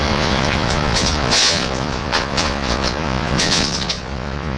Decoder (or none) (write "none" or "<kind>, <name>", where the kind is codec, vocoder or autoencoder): vocoder, Vocos